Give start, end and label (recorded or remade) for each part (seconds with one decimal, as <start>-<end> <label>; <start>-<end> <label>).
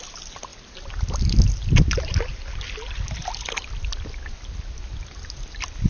0.0-5.9 recorded